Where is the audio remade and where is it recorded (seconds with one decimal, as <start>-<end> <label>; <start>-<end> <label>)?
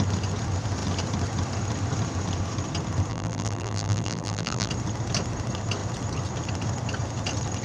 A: 0.0-3.1 recorded; 3.1-4.7 remade; 4.7-7.6 recorded